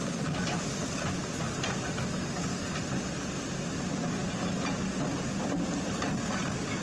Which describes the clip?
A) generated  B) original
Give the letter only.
B